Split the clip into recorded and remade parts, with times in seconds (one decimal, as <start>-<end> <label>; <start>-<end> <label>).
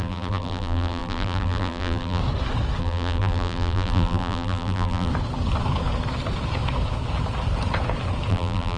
0.0-2.2 remade; 2.2-2.8 recorded; 2.8-5.1 remade; 5.1-8.3 recorded; 8.3-8.8 remade